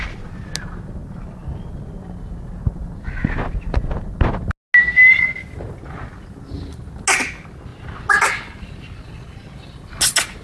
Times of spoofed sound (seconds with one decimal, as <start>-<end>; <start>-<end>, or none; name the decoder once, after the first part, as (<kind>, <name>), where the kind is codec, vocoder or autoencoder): none